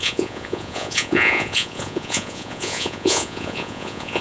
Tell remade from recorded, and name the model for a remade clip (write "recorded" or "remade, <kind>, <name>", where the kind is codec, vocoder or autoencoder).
remade, vocoder, Vocos